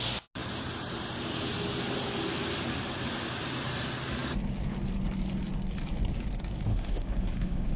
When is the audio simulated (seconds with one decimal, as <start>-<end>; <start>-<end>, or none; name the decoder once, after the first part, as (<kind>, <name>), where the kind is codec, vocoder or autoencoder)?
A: 6.7-7.8 (autoencoder, DAC-VAE)